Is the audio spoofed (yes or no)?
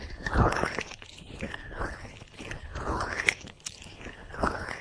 yes